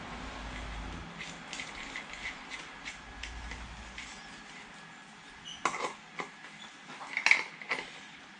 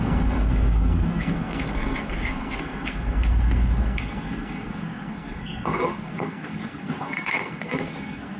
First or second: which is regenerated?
second